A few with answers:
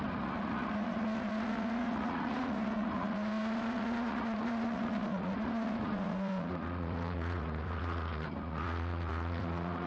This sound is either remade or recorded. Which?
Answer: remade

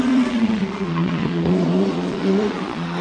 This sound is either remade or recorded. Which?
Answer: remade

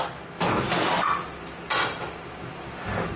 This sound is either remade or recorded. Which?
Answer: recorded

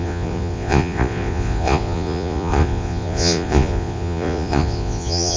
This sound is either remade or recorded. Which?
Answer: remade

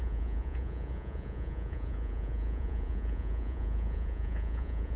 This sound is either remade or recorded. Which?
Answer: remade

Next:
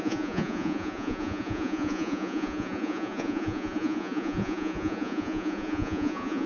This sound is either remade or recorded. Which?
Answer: remade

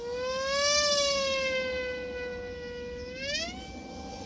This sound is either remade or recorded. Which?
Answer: recorded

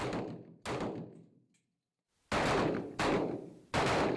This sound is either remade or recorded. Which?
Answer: recorded